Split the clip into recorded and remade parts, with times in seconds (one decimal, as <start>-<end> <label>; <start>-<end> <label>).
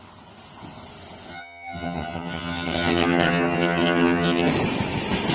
0.0-1.3 recorded; 1.3-4.5 remade; 4.5-5.3 recorded